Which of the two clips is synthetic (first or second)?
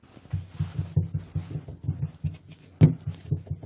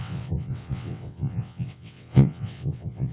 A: second